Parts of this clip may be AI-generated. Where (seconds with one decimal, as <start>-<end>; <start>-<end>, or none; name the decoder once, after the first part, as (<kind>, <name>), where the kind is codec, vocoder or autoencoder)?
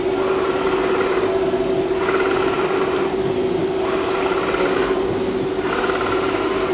none